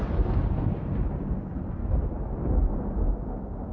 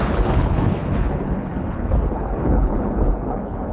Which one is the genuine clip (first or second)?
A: first